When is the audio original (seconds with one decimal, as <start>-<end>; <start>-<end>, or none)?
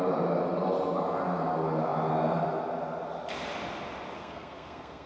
0.0-4.2